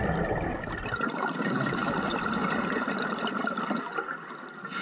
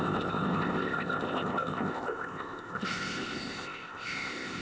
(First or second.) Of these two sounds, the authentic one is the first